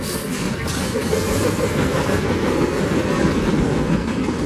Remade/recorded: remade